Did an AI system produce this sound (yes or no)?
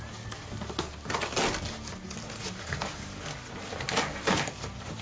no